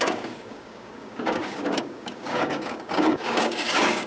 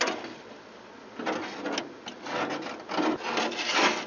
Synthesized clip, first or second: first